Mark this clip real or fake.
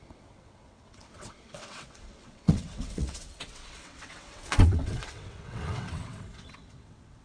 fake